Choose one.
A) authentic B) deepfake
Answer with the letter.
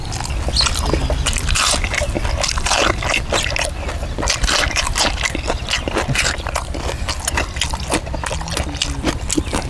A